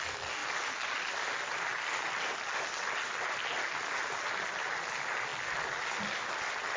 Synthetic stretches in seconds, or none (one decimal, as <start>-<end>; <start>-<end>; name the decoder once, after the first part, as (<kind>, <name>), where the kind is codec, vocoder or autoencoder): none